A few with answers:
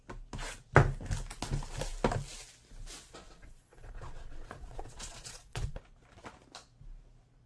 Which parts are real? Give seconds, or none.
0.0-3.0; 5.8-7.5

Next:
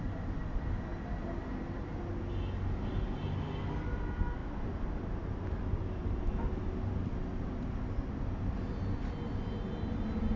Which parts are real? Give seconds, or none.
0.0-10.4

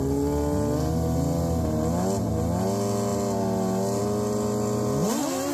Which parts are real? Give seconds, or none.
0.0-5.5

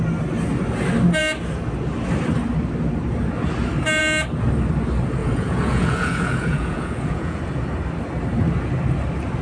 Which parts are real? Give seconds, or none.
0.0-5.2; 7.4-9.4